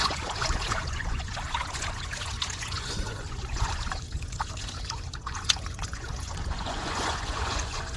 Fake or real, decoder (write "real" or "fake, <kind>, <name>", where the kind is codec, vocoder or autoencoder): fake, vocoder, Vocos